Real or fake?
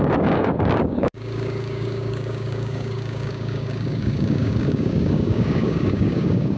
fake